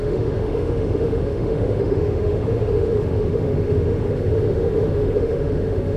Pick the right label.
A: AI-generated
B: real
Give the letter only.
A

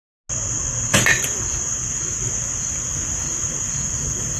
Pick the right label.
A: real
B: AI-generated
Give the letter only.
A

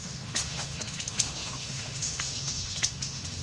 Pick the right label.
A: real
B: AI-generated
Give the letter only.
B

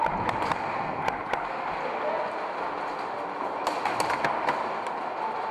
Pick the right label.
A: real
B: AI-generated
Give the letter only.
A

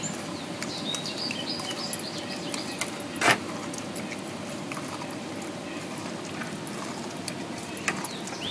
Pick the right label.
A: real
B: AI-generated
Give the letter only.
A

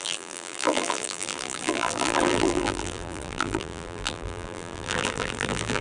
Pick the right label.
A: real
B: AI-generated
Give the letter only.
B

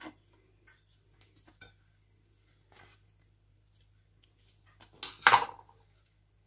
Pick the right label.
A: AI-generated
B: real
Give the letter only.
B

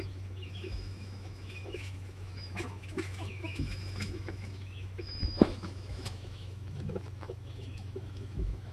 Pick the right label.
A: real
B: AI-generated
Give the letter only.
B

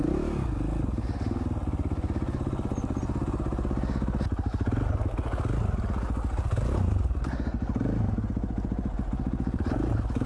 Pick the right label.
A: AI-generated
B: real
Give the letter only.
B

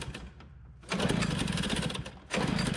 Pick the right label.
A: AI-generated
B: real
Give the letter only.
B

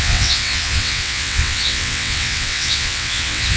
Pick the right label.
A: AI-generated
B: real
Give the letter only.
A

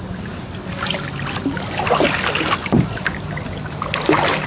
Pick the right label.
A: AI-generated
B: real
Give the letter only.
B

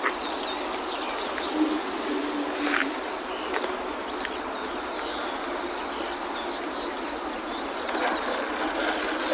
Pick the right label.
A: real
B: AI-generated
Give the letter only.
A